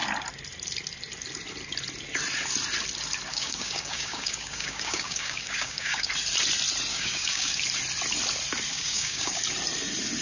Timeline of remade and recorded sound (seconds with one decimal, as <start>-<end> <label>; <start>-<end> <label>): 0.0-3.3 recorded; 3.3-6.1 remade; 6.1-6.9 recorded; 6.9-7.6 remade; 7.6-8.7 recorded; 8.7-9.4 remade; 9.4-10.2 recorded